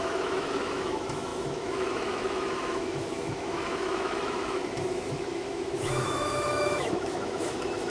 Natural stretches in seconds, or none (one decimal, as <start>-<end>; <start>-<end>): none